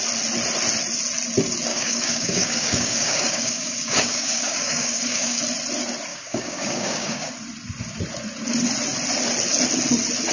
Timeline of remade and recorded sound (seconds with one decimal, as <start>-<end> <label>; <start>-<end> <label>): 0.0-1.7 recorded; 1.7-5.4 remade; 5.4-6.1 recorded; 6.1-7.3 remade; 7.3-10.3 recorded

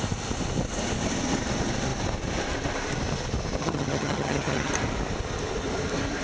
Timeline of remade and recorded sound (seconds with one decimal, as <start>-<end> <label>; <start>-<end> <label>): 0.0-3.6 recorded; 3.6-4.7 remade; 4.7-6.2 recorded